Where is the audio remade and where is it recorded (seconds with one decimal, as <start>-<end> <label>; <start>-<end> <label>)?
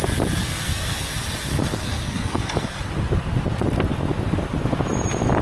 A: 0.0-0.4 recorded; 0.4-1.1 remade; 1.1-1.6 recorded; 1.6-2.8 remade; 2.8-5.4 recorded